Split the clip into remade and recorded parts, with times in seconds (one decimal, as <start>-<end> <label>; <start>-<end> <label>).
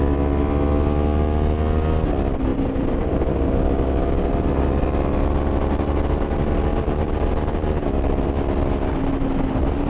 0.0-2.5 recorded; 2.5-4.8 remade; 4.8-6.7 recorded; 6.7-7.5 remade; 7.5-9.9 recorded